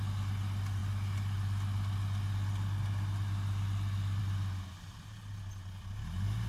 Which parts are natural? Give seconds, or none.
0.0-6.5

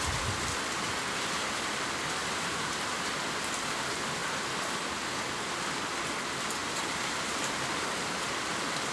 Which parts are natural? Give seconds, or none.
0.0-2.2; 3.1-6.6; 7.7-8.9

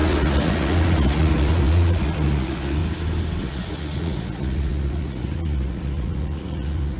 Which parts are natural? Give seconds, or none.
2.8-3.4

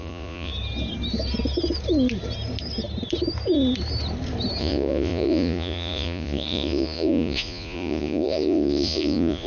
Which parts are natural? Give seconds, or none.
0.5-4.6